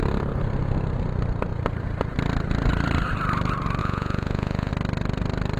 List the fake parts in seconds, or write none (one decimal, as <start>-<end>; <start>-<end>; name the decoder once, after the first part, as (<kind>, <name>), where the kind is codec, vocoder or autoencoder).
3.8-4.7 (vocoder, Vocos)